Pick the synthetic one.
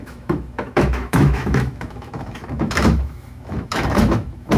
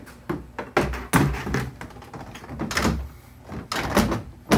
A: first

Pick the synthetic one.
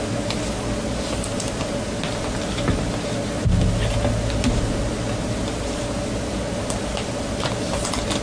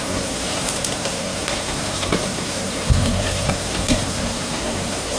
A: second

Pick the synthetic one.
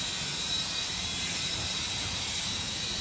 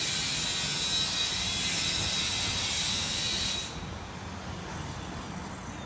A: first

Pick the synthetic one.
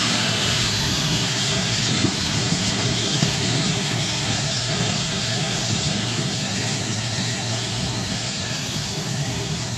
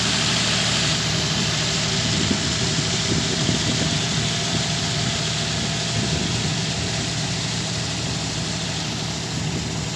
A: first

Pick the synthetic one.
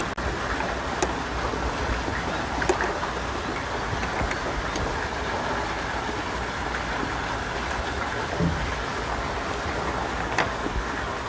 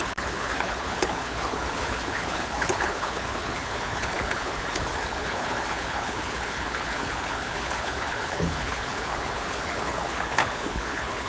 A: second